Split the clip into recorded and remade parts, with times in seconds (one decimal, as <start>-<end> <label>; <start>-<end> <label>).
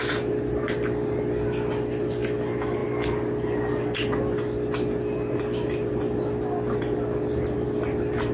0.0-8.3 recorded